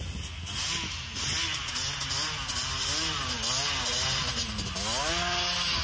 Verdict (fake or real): real